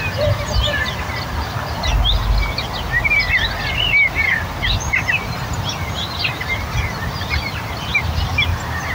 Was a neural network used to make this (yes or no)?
no